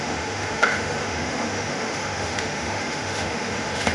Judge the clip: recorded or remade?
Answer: remade